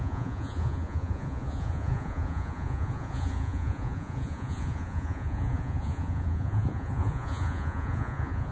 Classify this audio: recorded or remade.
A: remade